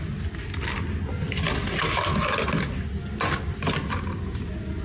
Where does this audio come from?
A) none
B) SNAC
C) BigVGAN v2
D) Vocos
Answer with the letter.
A